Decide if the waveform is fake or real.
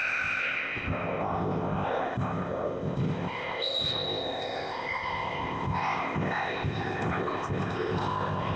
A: fake